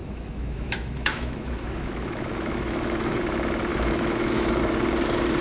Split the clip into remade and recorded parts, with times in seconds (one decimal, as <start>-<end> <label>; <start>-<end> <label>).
0.0-3.2 remade; 3.2-3.7 recorded; 3.7-4.6 remade; 4.6-5.4 recorded